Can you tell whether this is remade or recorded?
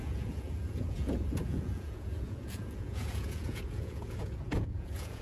remade